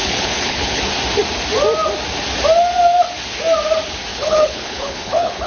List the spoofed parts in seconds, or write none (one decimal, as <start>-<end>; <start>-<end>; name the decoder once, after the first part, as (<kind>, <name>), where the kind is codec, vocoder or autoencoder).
0.0-0.8 (codec, HILCodec); 4.1-5.5